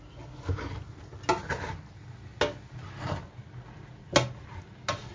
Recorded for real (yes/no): yes